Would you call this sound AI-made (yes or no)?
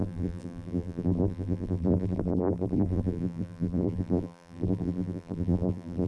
yes